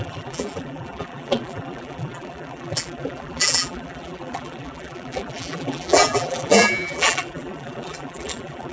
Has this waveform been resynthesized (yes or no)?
yes